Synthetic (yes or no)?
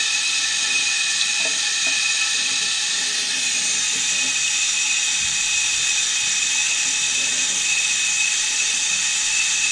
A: no